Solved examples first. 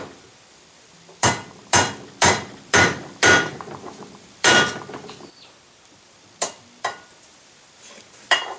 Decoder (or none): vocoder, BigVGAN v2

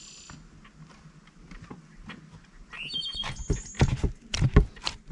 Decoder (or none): none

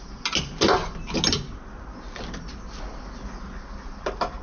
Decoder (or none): none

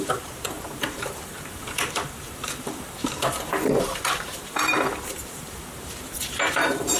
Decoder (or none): vocoder, BigVGAN v2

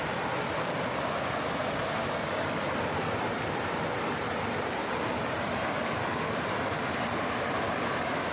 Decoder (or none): none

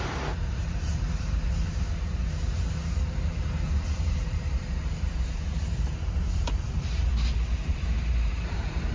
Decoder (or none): vocoder, BigVGAN v2